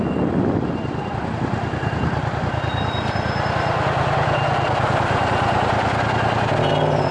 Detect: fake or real real